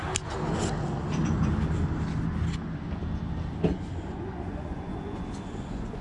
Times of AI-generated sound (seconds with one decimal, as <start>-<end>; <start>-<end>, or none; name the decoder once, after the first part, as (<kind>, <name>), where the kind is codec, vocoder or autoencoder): 3.7-6.0 (vocoder, Vocos)